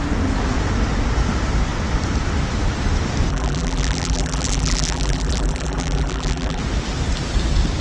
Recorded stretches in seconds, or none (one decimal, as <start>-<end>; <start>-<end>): 0.0-3.3; 6.6-7.8